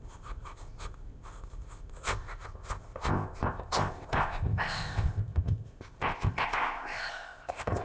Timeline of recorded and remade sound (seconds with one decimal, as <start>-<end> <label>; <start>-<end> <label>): 0.0-7.8 remade